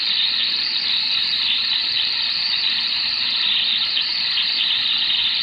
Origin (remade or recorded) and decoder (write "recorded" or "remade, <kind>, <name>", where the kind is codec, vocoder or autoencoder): remade, vocoder, BigVGAN v2